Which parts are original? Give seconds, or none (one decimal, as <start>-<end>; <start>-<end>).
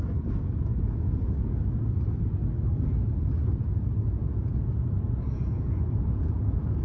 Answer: 0.0-0.7; 1.3-4.2